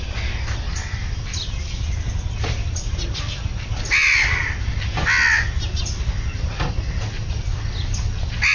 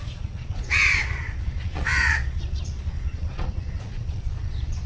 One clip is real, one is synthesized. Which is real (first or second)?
first